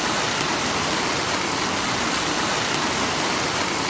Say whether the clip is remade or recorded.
recorded